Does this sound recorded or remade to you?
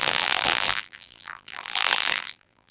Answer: remade